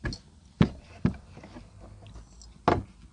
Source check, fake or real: real